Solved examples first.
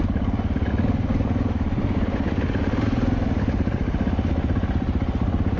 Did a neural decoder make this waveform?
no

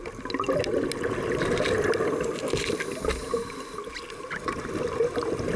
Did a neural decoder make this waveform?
no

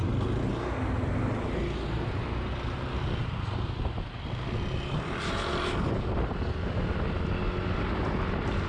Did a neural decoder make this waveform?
no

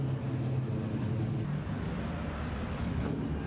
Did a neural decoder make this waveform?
no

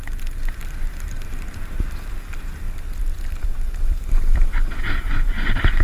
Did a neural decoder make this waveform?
no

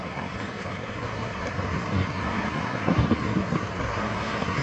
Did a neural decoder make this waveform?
yes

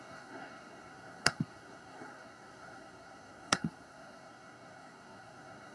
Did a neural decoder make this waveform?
yes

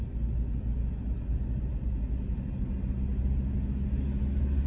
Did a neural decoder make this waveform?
no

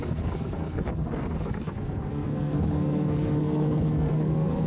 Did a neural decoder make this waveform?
yes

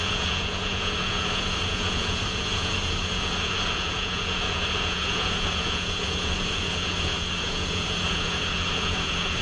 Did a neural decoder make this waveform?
yes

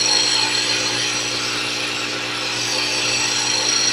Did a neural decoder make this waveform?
no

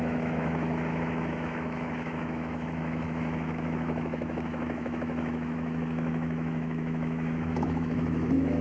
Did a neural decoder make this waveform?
yes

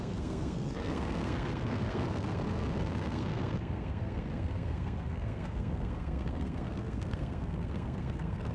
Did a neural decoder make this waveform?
yes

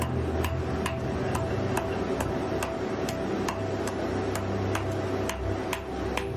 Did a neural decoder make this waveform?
no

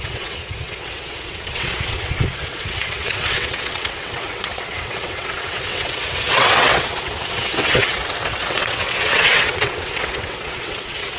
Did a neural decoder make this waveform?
yes